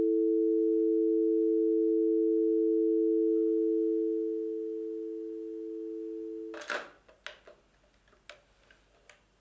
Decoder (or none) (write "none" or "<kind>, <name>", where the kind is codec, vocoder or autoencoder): none